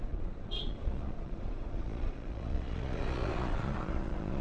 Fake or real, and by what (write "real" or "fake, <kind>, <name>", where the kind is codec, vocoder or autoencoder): fake, vocoder, Vocos